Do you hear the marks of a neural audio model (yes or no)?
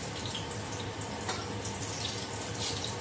yes